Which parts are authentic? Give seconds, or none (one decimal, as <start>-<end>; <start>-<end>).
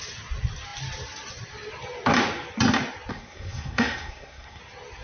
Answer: 0.0-3.1; 4.6-5.0